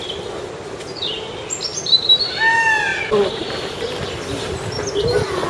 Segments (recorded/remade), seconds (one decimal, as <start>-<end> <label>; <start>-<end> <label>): 0.0-5.5 recorded